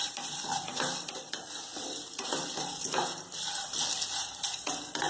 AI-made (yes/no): no